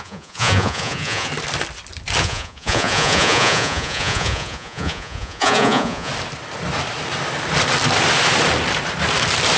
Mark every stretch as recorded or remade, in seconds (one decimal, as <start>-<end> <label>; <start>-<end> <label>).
0.0-1.3 remade; 1.3-2.2 recorded; 2.2-6.1 remade; 6.1-9.6 recorded

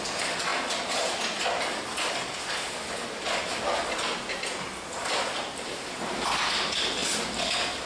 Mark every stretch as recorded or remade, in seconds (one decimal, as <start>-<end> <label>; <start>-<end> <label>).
0.0-7.9 recorded

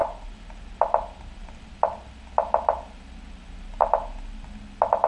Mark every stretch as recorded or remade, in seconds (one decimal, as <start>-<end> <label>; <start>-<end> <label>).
0.0-5.1 recorded

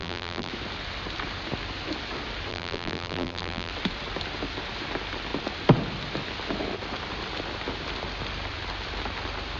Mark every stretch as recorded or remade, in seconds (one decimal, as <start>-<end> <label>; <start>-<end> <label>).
0.0-0.5 remade; 0.5-2.5 recorded; 2.5-3.7 remade; 3.7-9.6 recorded